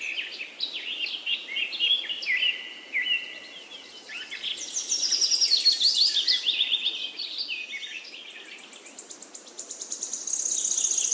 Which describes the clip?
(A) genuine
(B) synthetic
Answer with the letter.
A